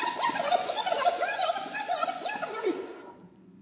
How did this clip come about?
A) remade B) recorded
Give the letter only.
A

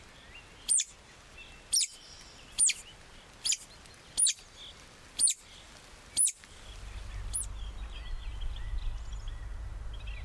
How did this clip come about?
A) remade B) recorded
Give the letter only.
B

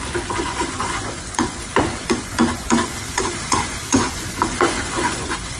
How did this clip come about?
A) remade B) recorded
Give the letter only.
A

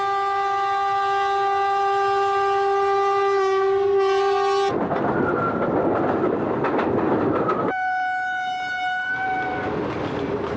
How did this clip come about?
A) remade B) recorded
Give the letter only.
B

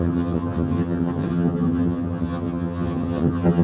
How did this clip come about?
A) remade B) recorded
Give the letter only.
A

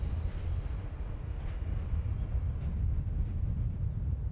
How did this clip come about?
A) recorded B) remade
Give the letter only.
A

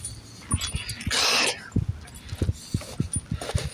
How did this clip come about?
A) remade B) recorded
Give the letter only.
B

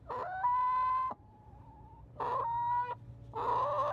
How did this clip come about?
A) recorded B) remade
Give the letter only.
A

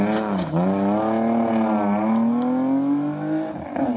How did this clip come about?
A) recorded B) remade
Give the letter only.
A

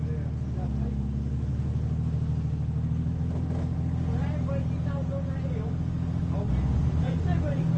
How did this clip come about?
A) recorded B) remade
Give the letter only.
A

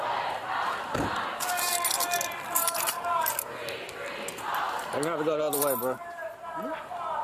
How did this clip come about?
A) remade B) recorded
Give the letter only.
B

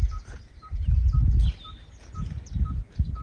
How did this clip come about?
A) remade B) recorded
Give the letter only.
B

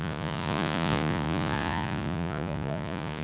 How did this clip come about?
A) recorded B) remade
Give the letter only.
B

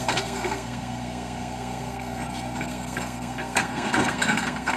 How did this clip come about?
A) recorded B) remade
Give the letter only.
B